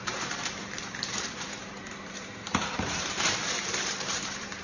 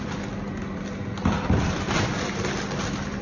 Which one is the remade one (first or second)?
first